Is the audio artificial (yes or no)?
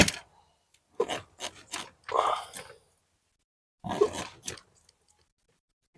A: no